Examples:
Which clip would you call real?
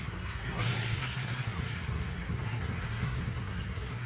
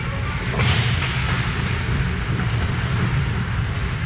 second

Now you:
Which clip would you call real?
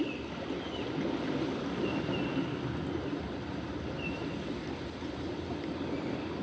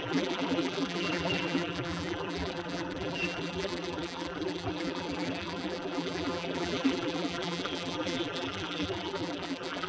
first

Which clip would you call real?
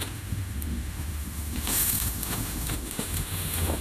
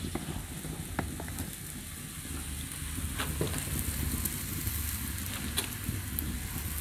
second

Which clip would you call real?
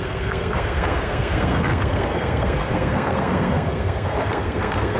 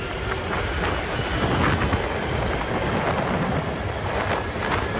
second